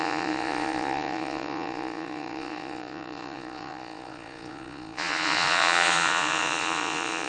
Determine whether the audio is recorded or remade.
remade